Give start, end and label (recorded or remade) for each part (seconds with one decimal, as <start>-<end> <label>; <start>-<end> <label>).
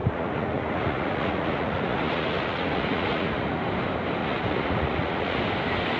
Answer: 0.0-3.6 remade; 3.6-4.2 recorded; 4.2-5.4 remade; 5.4-6.0 recorded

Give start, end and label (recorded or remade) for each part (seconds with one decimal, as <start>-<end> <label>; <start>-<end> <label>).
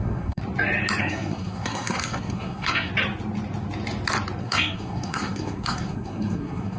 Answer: 0.0-0.4 remade; 0.4-1.0 recorded; 1.0-2.9 remade; 2.9-4.4 recorded; 4.4-6.8 remade